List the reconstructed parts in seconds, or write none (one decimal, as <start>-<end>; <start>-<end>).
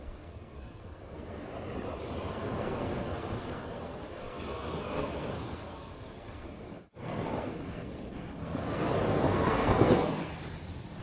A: 0.0-1.5; 2.3-10.3